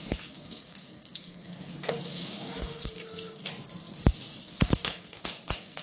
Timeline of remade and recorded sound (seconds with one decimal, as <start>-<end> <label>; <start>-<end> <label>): 0.0-3.5 remade; 3.5-4.4 recorded; 4.4-5.8 remade